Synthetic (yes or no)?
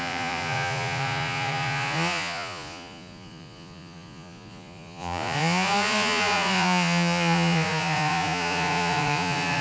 yes